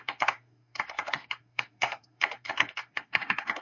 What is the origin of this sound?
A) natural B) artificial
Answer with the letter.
B